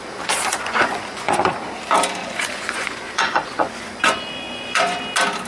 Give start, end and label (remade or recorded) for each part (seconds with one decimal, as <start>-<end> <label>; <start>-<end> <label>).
0.0-0.5 recorded; 0.5-1.5 remade; 1.5-2.2 recorded; 2.2-5.0 remade; 5.0-5.5 recorded